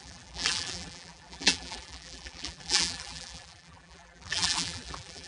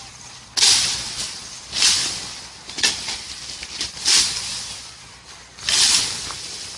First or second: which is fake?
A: first